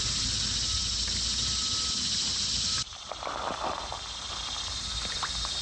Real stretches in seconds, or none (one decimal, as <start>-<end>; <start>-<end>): 0.0-5.6